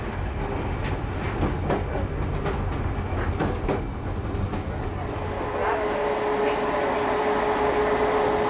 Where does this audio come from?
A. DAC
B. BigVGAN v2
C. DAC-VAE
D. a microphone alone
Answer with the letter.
D